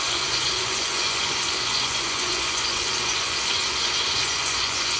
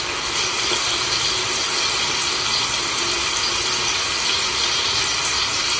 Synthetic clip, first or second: first